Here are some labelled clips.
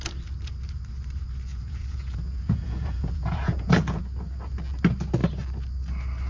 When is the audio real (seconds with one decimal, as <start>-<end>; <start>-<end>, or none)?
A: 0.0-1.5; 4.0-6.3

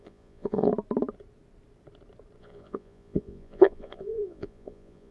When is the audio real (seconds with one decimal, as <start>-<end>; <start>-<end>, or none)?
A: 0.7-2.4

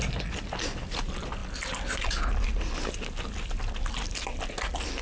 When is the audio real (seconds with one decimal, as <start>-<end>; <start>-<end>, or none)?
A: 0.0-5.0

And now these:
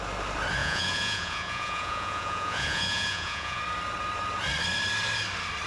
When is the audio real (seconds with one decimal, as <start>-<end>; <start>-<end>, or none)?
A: 0.0-0.6; 3.6-5.7

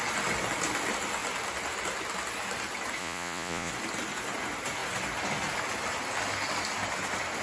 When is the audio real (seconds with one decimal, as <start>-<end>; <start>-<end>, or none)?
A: 0.0-3.0; 3.7-7.4

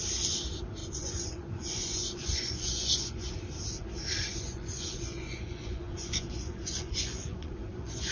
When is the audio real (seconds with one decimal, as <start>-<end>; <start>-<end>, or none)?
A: 0.0-0.8; 3.3-4.2

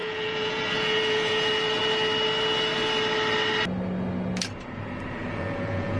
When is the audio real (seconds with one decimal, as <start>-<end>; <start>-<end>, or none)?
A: 1.8-5.3

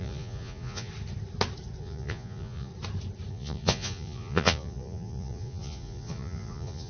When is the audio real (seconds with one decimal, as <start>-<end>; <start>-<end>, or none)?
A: 0.9-1.8; 2.7-3.3